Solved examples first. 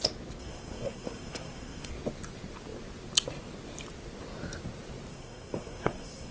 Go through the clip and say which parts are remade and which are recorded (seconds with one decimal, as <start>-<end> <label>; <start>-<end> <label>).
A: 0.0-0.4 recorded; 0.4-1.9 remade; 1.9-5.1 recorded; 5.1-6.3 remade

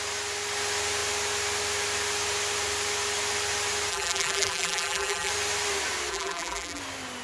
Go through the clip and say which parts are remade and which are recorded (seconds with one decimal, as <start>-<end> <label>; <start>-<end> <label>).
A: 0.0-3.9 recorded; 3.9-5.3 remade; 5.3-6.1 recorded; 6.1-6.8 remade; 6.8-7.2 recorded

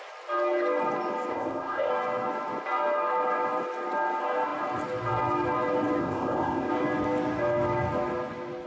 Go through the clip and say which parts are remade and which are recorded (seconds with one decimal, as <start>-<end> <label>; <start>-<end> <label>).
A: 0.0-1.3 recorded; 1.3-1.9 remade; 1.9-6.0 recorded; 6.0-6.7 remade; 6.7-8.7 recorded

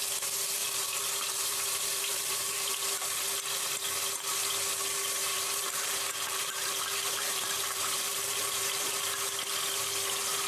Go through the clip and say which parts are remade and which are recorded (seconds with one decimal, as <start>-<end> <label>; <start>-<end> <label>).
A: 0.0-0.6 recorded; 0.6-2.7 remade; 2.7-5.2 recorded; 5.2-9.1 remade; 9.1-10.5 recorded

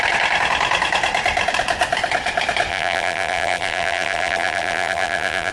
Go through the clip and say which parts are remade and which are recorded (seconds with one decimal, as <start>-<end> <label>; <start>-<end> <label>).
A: 0.0-2.7 recorded; 2.7-5.5 remade

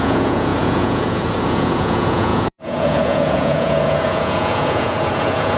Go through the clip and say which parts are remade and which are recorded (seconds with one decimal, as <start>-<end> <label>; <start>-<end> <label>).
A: 0.0-5.6 remade

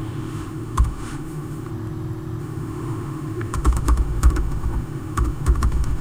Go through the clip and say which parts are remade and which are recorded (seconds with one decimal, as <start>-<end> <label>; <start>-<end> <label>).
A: 0.0-1.7 remade; 1.7-2.4 recorded; 2.4-6.0 remade

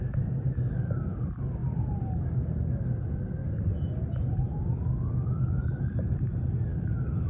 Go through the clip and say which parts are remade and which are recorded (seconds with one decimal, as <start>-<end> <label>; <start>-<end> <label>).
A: 0.0-7.3 recorded